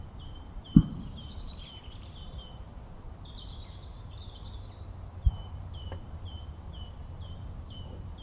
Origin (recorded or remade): remade